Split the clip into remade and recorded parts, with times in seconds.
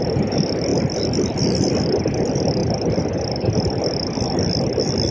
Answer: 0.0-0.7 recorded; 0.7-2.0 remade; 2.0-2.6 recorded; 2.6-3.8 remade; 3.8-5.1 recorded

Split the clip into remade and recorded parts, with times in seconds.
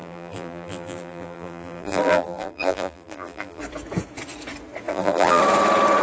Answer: 0.0-3.6 remade; 3.6-4.9 recorded; 4.9-5.4 remade; 5.4-6.0 recorded